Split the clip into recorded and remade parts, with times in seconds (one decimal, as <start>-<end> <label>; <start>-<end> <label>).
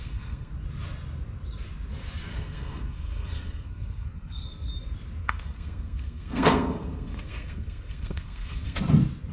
0.0-0.5 remade; 0.5-2.3 recorded; 2.3-4.7 remade; 4.7-5.2 recorded; 5.2-8.8 remade; 8.8-9.3 recorded